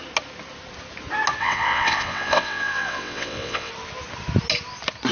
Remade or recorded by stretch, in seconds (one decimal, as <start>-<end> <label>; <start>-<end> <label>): 0.0-1.4 recorded; 1.4-3.7 remade; 3.7-5.1 recorded

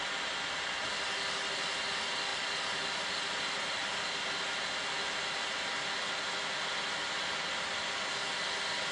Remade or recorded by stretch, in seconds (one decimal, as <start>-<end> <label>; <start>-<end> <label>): 0.0-8.9 recorded